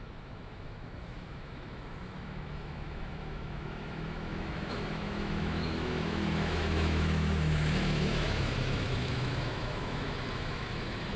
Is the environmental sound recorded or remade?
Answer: remade